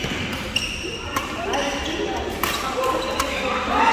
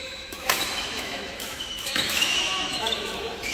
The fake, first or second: second